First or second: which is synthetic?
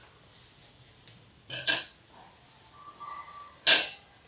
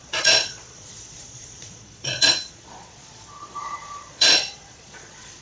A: second